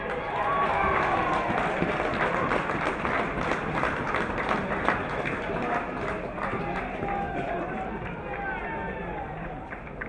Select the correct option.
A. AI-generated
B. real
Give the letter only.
B